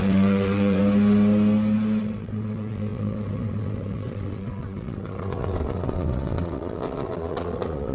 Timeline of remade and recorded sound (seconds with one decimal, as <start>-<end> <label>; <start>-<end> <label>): 0.0-0.8 remade; 0.8-2.0 recorded; 2.0-7.9 remade